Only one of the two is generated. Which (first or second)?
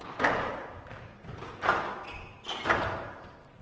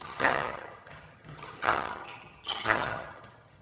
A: second